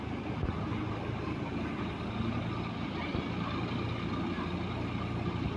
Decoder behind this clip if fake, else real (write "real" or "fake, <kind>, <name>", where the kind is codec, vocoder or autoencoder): real